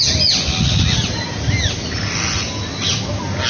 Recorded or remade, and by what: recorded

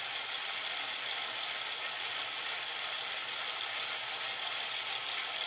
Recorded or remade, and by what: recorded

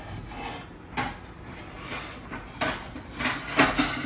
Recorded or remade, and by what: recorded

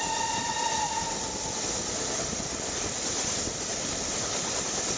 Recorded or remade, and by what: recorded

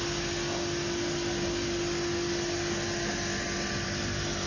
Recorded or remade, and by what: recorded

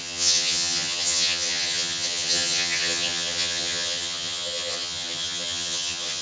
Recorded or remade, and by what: remade, vocoder, HiFi-GAN